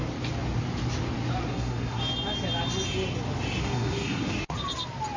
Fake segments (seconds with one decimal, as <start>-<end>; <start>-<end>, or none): 1.5-2.0; 3.6-4.3